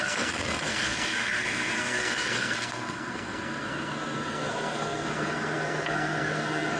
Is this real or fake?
fake